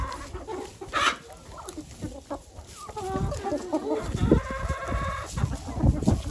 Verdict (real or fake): real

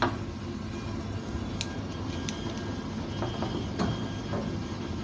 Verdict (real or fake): real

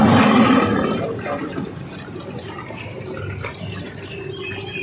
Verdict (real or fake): real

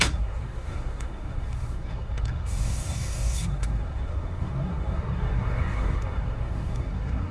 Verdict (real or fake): fake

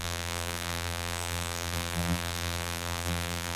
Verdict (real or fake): fake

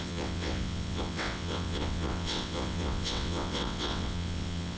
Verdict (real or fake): fake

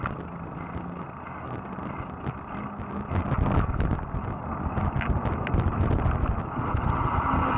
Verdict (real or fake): real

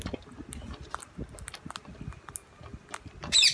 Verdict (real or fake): real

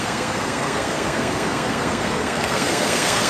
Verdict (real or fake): fake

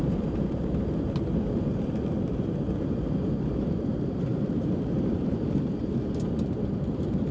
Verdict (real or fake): fake